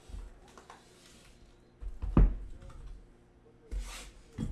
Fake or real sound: real